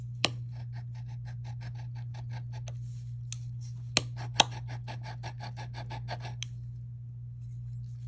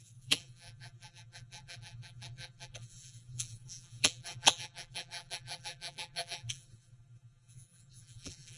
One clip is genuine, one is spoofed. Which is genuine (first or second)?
first